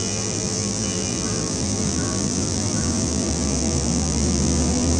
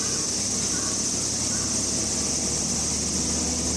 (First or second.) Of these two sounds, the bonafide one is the second